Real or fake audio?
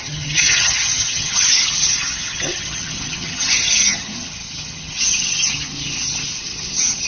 fake